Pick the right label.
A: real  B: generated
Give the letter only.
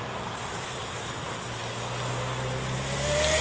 A